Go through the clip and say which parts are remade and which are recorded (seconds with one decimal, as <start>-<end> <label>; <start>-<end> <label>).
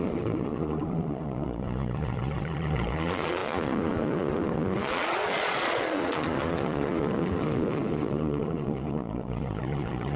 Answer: 0.0-10.2 remade